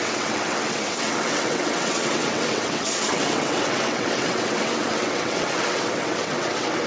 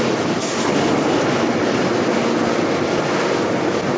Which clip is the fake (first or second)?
first